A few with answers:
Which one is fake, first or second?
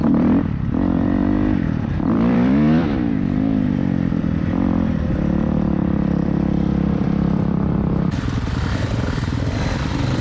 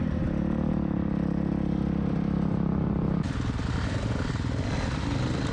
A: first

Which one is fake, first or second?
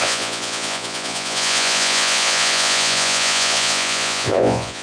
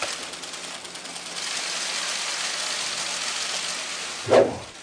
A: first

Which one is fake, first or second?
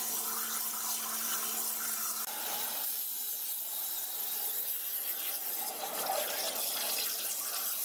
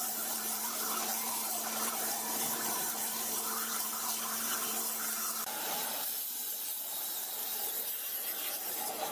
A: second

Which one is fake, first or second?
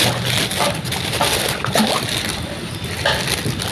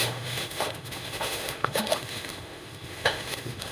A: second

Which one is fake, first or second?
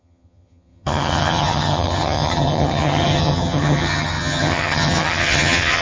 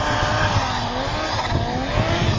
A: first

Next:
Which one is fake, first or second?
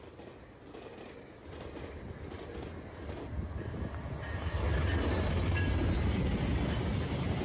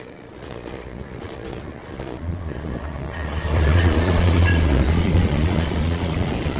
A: second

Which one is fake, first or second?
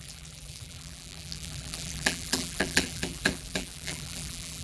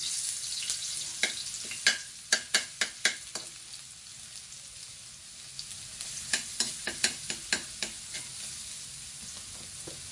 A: first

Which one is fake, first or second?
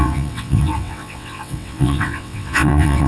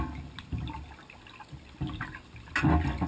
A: first